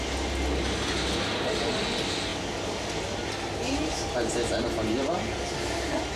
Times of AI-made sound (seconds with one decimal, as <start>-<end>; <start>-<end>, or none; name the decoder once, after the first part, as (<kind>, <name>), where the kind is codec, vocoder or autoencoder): none

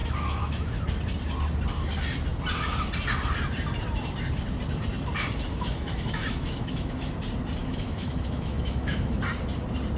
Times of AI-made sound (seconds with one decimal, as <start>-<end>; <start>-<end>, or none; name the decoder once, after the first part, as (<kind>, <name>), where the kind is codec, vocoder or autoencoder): 0.0-0.8 (autoencoder, DAC-VAE); 5.5-7.1; 7.6-9.2

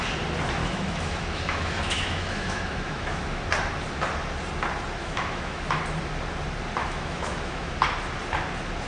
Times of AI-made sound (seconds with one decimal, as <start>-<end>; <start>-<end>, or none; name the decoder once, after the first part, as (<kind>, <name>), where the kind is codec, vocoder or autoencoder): 0.6-3.4 (autoencoder, DAC-VAE); 5.0-5.8; 6.8-7.7

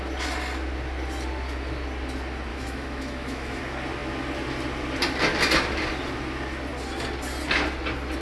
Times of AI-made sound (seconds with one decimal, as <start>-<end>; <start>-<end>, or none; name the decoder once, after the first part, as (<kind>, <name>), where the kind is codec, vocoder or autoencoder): 2.5-3.6 (autoencoder, DAC-VAE)

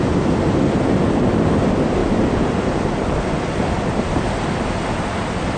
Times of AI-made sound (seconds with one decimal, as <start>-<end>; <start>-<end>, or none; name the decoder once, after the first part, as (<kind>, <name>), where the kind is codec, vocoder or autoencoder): none